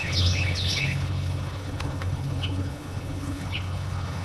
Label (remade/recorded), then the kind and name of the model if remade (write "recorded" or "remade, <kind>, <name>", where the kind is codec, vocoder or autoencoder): remade, codec, HILCodec